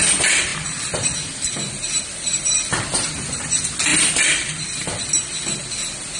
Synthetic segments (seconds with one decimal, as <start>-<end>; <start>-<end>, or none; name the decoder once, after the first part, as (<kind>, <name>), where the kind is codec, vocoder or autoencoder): 3.9-5.1 (vocoder, BigVGAN v2)